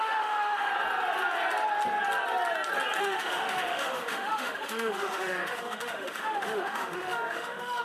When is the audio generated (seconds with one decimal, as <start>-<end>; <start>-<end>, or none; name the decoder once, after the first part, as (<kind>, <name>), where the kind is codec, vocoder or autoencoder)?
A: 0.0-0.7 (autoencoder, DAC-VAE); 3.0-7.8